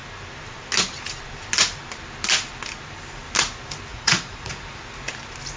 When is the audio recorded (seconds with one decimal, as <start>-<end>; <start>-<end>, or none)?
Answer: 0.0-3.9; 4.5-5.6